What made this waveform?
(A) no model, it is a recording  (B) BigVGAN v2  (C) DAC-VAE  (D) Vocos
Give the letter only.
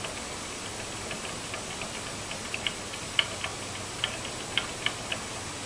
A